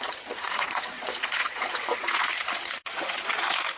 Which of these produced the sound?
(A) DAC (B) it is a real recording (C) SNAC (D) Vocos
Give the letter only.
D